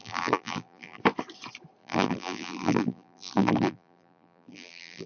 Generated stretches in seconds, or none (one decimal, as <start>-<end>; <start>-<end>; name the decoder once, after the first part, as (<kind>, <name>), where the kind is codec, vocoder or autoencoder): 0.0-1.0 (vocoder, BigVGAN v2); 1.8-5.1

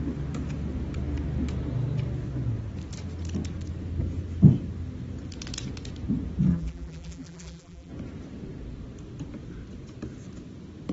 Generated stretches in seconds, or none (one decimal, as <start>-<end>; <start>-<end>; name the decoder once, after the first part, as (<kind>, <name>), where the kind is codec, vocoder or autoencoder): 6.5-7.9 (vocoder, BigVGAN v2)

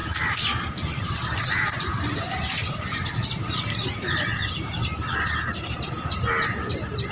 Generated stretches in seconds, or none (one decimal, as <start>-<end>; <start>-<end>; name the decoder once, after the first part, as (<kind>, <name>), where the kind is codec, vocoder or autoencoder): 0.6-4.8 (vocoder, BigVGAN v2)

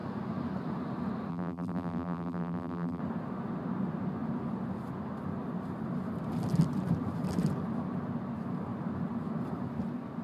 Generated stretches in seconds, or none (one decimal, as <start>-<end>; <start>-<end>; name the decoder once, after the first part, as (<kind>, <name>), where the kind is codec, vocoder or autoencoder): 1.3-3.0 (vocoder, BigVGAN v2)

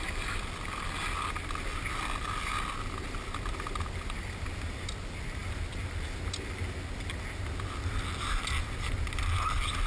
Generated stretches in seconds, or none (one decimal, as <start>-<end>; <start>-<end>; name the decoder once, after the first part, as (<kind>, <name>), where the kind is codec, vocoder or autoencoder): none

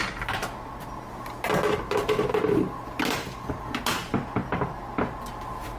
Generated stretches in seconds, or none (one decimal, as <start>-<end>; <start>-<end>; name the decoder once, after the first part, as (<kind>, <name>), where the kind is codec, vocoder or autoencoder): none